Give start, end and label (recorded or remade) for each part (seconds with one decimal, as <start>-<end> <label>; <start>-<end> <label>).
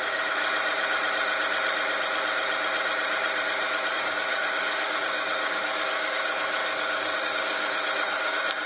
0.0-0.4 remade; 0.4-3.9 recorded; 3.9-8.7 remade